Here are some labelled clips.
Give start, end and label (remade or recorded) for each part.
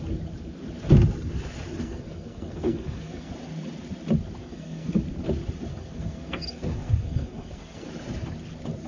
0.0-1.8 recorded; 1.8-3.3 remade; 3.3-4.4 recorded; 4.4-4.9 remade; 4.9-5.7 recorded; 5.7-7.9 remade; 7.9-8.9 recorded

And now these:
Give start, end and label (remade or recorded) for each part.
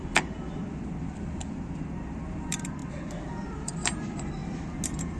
0.0-2.8 remade; 2.8-3.5 recorded; 3.5-4.4 remade; 4.4-5.2 recorded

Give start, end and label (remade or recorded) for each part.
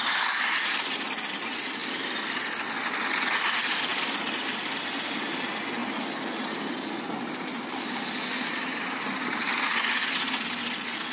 0.0-1.8 recorded; 1.8-2.4 remade; 2.4-3.9 recorded; 3.9-4.8 remade; 4.8-11.1 recorded